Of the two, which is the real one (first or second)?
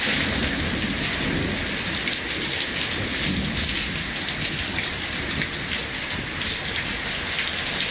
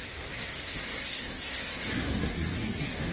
first